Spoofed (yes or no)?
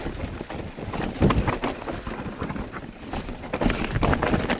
no